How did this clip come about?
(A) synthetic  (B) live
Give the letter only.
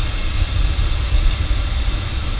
B